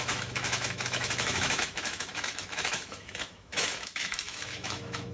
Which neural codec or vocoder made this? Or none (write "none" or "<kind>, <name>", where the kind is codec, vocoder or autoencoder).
autoencoder, DAC-VAE